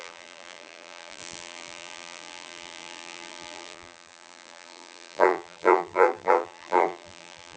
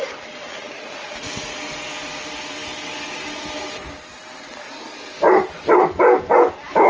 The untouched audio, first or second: second